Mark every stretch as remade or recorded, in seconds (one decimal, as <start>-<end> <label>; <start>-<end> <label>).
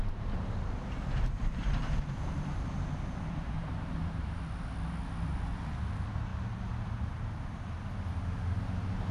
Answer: 0.0-4.4 remade; 4.4-9.1 recorded